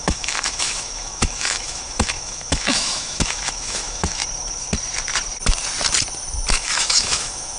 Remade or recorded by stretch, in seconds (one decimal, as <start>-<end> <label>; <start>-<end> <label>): 0.0-4.2 remade; 4.2-6.5 recorded; 6.5-7.6 remade